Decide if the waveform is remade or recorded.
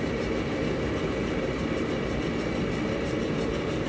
recorded